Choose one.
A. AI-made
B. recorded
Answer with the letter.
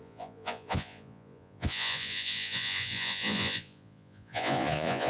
A